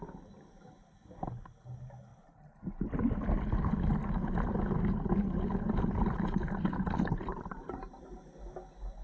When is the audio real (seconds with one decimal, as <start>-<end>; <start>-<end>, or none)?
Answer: 0.0-7.3; 8.0-9.0